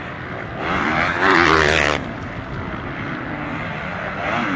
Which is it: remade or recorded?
recorded